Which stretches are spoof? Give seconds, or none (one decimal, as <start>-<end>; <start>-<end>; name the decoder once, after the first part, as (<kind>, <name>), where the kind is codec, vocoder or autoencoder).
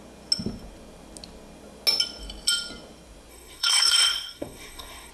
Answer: 3.3-5.1 (codec, SNAC)